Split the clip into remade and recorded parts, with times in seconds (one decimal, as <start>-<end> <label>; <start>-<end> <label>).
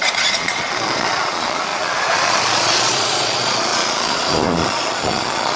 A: 0.0-5.6 remade